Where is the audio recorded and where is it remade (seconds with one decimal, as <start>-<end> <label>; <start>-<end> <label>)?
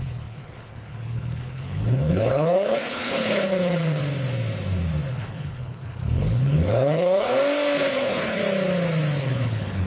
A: 0.0-4.0 remade; 4.0-5.1 recorded; 5.1-7.3 remade; 7.3-7.9 recorded; 7.9-8.4 remade; 8.4-9.2 recorded; 9.2-9.9 remade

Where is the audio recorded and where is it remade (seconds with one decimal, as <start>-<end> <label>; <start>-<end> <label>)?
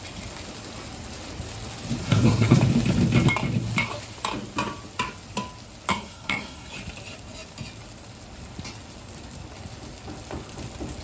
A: 0.0-2.0 recorded; 2.0-2.6 remade; 2.6-5.9 recorded; 5.9-6.7 remade; 6.7-11.0 recorded